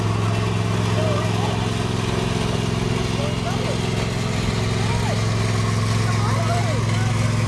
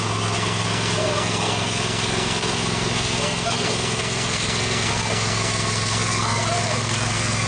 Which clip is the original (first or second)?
first